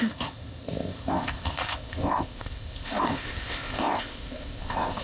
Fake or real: fake